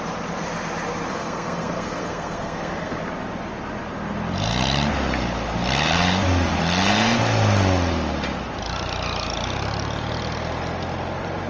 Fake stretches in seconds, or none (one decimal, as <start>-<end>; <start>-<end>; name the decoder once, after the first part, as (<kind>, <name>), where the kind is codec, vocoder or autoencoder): 1.1-3.0 (codec, SNAC)